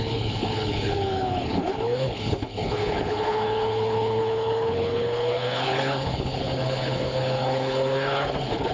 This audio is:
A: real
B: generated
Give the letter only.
B